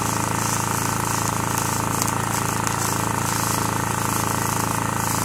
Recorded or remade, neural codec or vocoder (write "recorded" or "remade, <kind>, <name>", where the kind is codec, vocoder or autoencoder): recorded